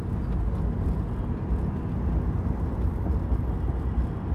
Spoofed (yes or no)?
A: no